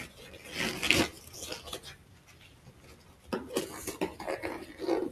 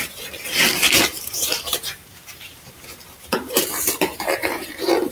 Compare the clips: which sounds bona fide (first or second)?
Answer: first